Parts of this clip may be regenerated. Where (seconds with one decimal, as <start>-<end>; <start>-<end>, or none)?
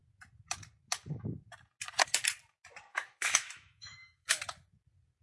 2.9-4.4